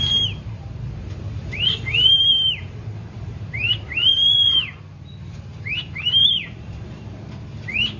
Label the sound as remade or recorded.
remade